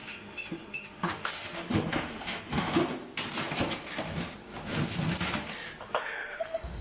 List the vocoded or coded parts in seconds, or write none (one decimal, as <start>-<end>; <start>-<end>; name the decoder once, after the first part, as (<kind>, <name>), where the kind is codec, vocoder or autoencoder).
0.0-2.8 (autoencoder, DAC-VAE); 6.0-6.8